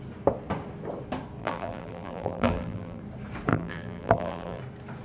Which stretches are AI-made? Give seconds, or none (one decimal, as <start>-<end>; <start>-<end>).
1.4-3.0; 3.5-4.6